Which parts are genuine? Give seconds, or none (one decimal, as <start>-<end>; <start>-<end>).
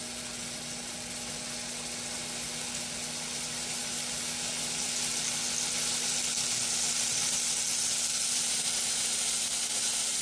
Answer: 0.0-10.2